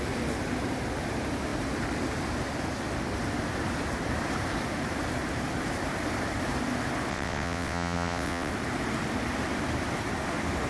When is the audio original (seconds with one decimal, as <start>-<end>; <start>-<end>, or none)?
0.0-7.1; 8.5-10.7

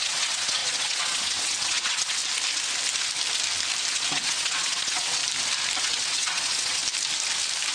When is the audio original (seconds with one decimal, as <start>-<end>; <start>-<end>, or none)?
2.2-3.9; 5.2-5.8; 6.8-7.7

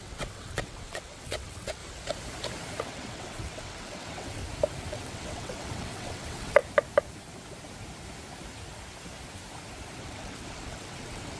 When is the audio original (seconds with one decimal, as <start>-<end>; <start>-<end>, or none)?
1.8-2.8; 4.4-4.9; 6.6-10.0

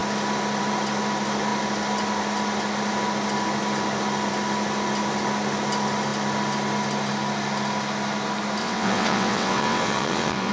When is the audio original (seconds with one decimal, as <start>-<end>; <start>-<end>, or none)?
0.0-8.6